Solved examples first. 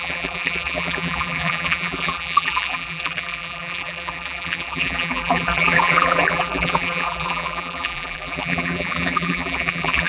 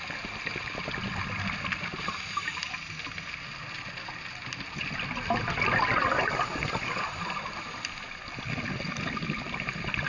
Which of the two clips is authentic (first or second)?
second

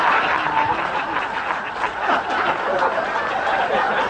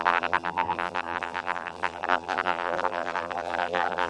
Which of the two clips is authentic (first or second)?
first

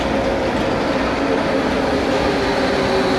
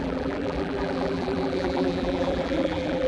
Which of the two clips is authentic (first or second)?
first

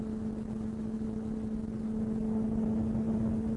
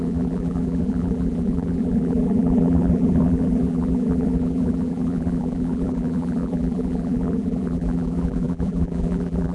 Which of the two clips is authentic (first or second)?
first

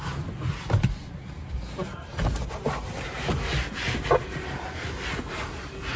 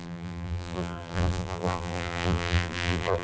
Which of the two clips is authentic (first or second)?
first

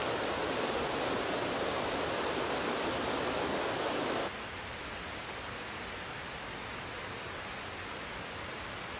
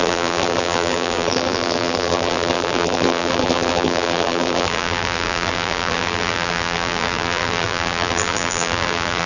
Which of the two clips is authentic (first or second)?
first